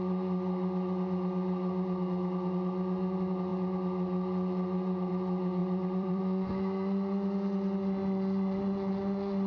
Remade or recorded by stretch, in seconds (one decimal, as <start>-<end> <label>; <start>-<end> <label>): 0.0-5.6 recorded; 5.6-6.2 remade; 6.2-9.5 recorded